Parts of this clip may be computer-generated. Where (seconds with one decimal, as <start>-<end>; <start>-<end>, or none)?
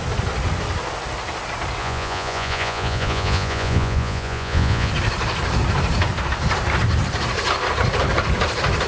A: 1.8-4.9